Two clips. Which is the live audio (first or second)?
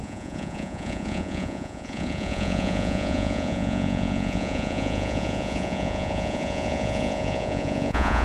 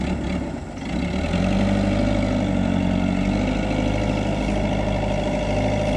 second